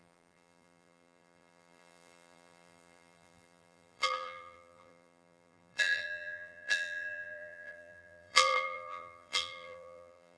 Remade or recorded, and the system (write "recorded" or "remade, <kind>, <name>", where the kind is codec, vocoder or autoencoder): remade, vocoder, BigVGAN v2